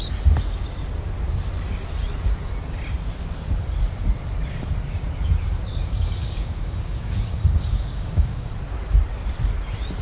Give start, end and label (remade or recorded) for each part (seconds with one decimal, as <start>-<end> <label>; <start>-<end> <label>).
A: 0.0-5.8 recorded; 5.8-8.5 remade; 8.5-10.0 recorded